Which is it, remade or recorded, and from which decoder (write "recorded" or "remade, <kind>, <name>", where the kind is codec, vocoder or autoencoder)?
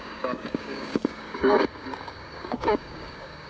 remade, codec, DAC